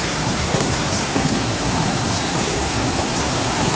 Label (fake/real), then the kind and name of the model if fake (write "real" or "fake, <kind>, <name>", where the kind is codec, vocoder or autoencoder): fake, codec, SNAC